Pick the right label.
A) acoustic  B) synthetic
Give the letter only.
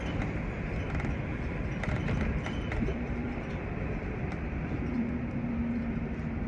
B